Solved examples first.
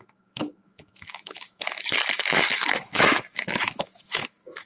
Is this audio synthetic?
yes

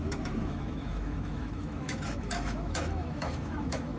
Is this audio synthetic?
yes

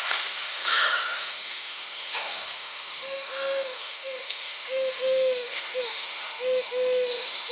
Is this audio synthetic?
yes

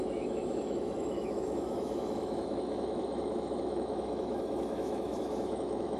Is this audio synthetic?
yes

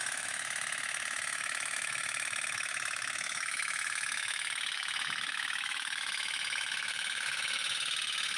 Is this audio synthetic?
yes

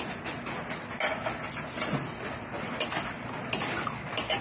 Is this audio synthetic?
no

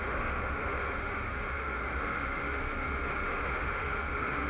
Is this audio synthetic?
yes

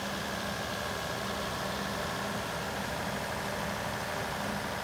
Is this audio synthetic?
no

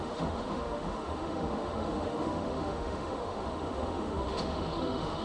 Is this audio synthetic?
yes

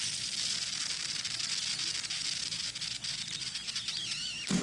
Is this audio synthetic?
no